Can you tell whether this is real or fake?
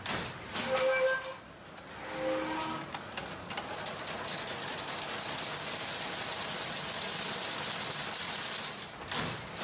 real